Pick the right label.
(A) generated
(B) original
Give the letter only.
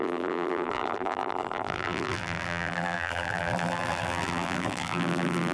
A